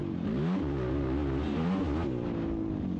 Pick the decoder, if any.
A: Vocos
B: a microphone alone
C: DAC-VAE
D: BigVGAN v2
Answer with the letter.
B